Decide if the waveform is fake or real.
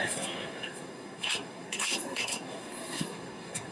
fake